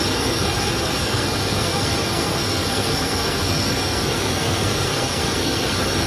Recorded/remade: remade